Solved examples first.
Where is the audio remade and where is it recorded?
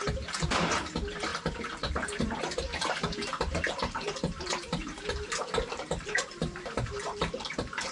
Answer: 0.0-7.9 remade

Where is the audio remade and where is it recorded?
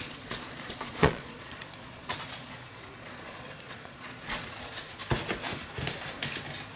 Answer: 0.0-5.0 remade; 5.0-6.8 recorded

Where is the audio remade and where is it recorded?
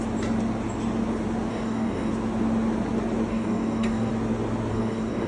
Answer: 0.0-1.5 recorded; 1.5-2.1 remade; 2.1-3.3 recorded; 3.3-4.1 remade; 4.1-4.7 recorded; 4.7-5.3 remade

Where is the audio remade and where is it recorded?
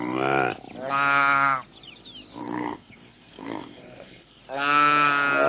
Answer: 0.0-2.4 recorded; 2.4-4.4 remade; 4.4-5.5 recorded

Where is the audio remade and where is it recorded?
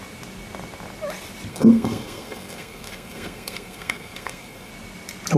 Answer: 0.0-1.5 recorded; 1.5-4.7 remade; 4.7-5.4 recorded